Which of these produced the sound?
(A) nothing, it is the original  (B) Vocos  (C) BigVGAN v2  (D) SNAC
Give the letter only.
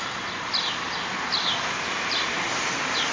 A